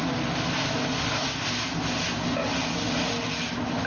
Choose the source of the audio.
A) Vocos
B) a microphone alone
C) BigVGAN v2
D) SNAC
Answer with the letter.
B